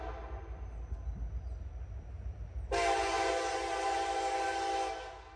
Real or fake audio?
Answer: real